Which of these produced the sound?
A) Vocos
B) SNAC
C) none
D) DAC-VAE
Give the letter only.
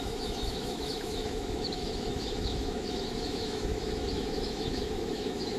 D